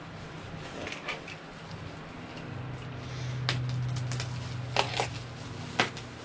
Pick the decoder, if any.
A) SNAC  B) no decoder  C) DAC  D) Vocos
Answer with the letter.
B